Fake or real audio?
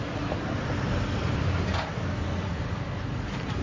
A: real